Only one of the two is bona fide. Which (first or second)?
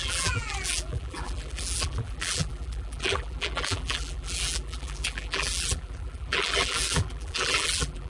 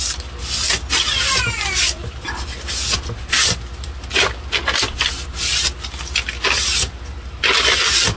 second